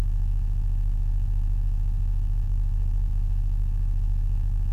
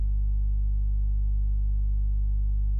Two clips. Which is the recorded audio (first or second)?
second